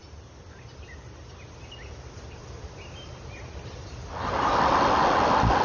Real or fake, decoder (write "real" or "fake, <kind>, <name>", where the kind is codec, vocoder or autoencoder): real